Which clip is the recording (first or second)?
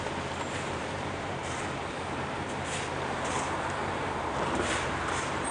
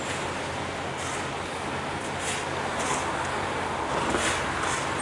second